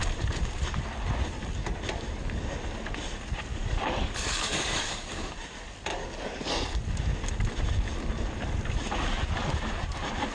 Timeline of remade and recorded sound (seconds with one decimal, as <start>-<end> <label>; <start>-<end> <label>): 0.0-3.5 recorded; 3.5-5.3 remade; 5.3-5.9 recorded; 5.9-6.5 remade; 6.5-10.3 recorded